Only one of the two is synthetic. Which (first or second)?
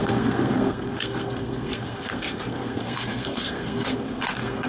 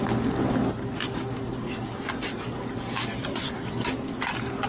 first